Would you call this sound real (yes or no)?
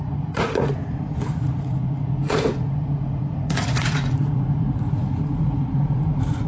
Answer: no